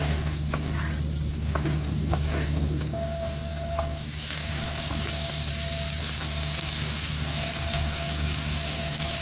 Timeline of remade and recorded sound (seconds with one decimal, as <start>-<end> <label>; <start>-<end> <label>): 0.0-0.7 remade; 0.7-1.3 recorded; 1.3-5.5 remade; 5.5-6.0 recorded; 6.0-9.2 remade

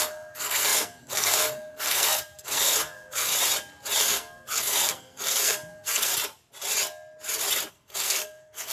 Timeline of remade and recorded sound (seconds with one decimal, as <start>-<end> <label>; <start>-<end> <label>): 0.0-3.3 remade; 3.3-4.0 recorded; 4.0-6.1 remade; 6.1-7.7 recorded; 7.7-8.7 remade

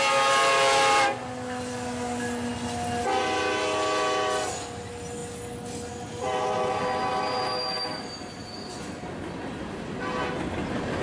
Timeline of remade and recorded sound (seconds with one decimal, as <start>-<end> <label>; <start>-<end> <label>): 0.0-11.0 recorded

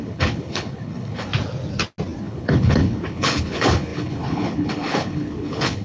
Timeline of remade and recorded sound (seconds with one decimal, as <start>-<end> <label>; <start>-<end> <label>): 0.0-1.3 remade; 1.3-2.2 recorded; 2.2-5.8 remade

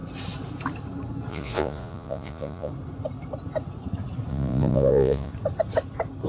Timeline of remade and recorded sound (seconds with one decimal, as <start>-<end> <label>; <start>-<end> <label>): 0.0-1.3 recorded; 1.3-2.7 remade; 2.7-4.3 recorded; 4.3-5.3 remade; 5.3-6.3 recorded

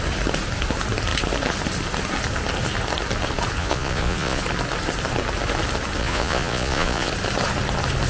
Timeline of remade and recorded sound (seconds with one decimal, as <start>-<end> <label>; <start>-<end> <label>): 0.0-3.6 recorded; 3.6-4.4 remade; 4.4-6.0 recorded; 6.0-7.1 remade; 7.1-8.1 recorded

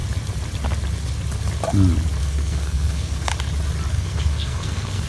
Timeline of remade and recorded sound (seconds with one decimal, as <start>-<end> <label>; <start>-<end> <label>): 0.0-2.2 recorded; 2.2-3.3 remade; 3.3-3.9 recorded; 3.9-5.1 remade